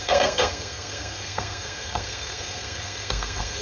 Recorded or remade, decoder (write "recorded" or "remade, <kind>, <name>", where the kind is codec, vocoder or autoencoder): remade, codec, SNAC